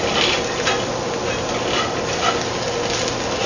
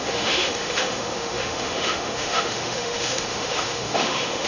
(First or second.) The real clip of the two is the first